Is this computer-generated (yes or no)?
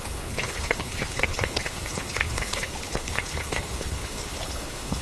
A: yes